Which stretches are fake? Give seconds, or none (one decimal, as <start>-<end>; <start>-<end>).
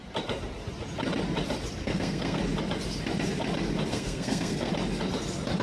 1.8-2.4; 3.9-4.7